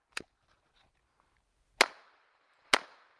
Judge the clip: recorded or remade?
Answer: recorded